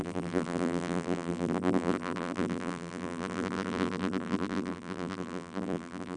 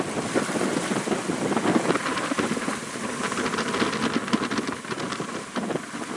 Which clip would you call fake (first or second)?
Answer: first